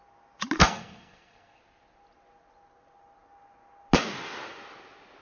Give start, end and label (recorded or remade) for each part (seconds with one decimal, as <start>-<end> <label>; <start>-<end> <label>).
0.0-0.6 recorded; 0.6-1.6 remade; 1.6-5.2 recorded